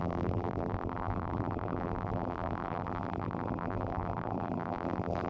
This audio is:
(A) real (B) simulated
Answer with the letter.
B